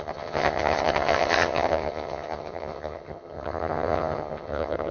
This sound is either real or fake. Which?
fake